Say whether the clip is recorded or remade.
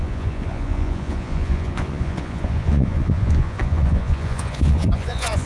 remade